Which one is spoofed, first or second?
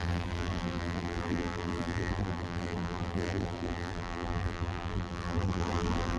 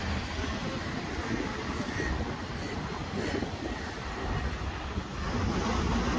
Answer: first